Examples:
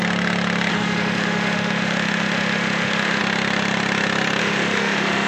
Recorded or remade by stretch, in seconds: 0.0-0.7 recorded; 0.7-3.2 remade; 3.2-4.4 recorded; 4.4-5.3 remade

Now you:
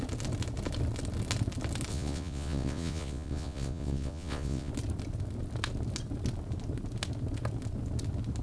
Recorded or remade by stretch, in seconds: 0.0-1.9 recorded; 1.9-4.7 remade; 4.7-8.4 recorded

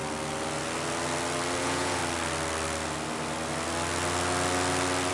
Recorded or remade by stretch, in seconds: 0.0-1.6 recorded; 1.6-2.0 remade; 2.0-5.1 recorded

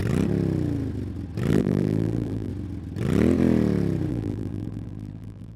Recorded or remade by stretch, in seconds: 0.0-1.5 recorded; 1.5-2.5 remade; 2.5-4.1 recorded; 4.1-5.6 remade

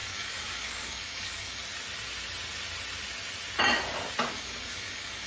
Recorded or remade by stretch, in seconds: 0.0-1.6 remade; 1.6-4.3 recorded; 4.3-5.3 remade

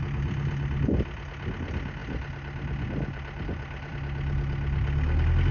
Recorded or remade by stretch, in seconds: 0.0-5.5 recorded

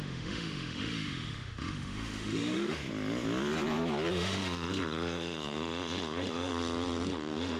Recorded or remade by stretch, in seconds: 0.0-2.8 remade; 2.8-4.1 recorded; 4.1-6.5 remade; 6.5-7.1 recorded; 7.1-7.6 remade